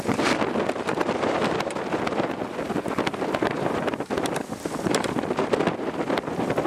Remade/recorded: recorded